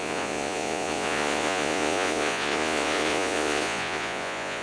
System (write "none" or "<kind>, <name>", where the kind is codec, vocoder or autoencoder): vocoder, Vocos